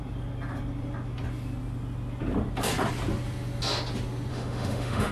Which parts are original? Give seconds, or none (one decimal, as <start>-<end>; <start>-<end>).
0.0-4.3